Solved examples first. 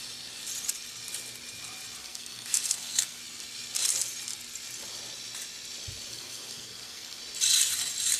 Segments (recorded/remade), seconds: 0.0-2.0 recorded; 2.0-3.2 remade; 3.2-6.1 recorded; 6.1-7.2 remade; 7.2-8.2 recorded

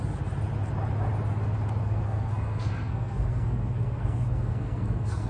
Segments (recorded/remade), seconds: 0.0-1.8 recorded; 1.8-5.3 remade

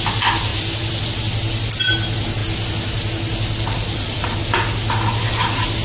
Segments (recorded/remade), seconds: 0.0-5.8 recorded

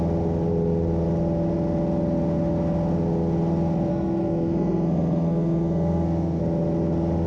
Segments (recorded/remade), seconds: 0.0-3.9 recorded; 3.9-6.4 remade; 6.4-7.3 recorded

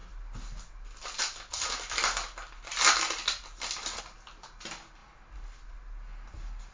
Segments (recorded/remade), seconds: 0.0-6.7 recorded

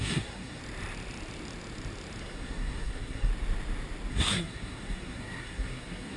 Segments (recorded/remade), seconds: 0.0-0.6 remade; 0.6-2.2 recorded; 2.2-3.3 remade; 3.3-4.1 recorded; 4.1-6.2 remade

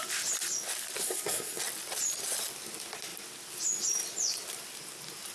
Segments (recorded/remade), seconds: 0.0-1.0 recorded; 1.0-1.6 remade; 1.6-5.3 recorded

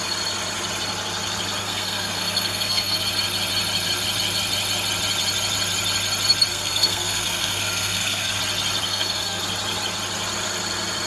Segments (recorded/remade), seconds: 0.0-1.6 recorded; 1.6-3.0 remade; 3.0-6.5 recorded; 6.5-8.4 remade; 8.4-8.8 recorded; 8.8-9.4 remade; 9.4-11.1 recorded